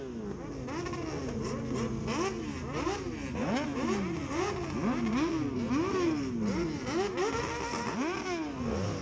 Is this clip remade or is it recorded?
recorded